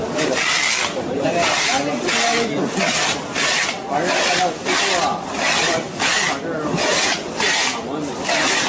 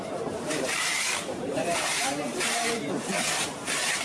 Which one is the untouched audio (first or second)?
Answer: first